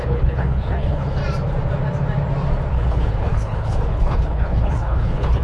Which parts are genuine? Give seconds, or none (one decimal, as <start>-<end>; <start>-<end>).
1.2-2.7